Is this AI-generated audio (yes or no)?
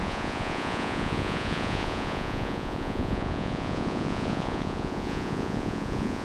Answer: yes